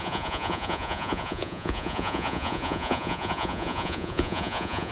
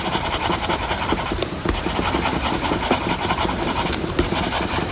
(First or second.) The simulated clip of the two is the first